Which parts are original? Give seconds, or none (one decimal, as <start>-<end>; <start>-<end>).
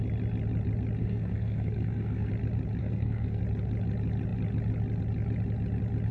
0.0-1.0; 2.3-2.8; 3.4-6.1